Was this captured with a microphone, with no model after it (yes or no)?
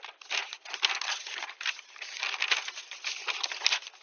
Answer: yes